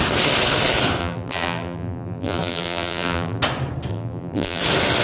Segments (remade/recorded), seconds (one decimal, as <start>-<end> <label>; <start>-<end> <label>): 0.0-1.0 recorded; 1.0-3.4 remade; 3.4-3.9 recorded; 3.9-4.6 remade; 4.6-5.0 recorded